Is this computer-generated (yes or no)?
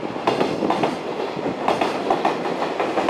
no